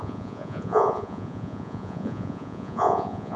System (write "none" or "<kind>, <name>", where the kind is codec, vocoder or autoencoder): vocoder, Vocos